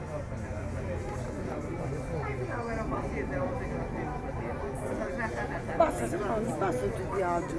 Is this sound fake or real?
real